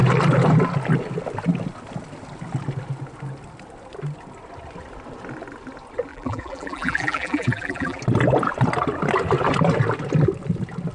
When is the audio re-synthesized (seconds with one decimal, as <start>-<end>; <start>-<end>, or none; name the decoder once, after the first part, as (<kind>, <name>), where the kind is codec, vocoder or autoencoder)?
6.1-8.0 (vocoder, BigVGAN v2)